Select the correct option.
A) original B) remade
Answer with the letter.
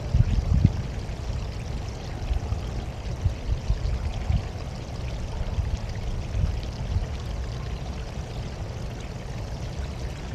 A